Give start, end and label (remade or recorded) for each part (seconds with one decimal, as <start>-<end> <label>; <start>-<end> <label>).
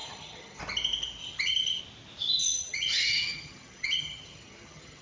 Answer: 0.0-0.6 remade; 0.6-1.2 recorded; 1.2-1.8 remade; 1.8-2.4 recorded; 2.4-5.0 remade